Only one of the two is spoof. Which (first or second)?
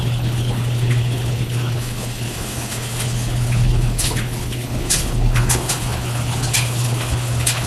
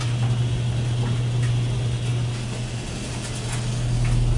first